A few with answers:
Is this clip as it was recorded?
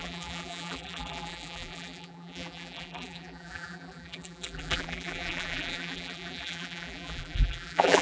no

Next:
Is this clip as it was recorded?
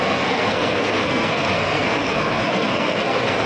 no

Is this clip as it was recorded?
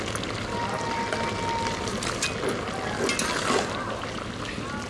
yes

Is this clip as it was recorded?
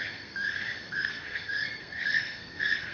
no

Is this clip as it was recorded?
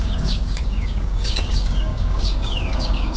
no